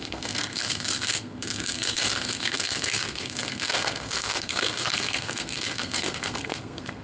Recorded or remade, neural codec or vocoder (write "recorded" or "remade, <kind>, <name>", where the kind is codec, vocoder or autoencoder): remade, codec, SNAC